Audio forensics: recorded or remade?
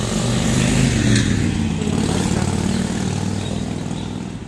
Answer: recorded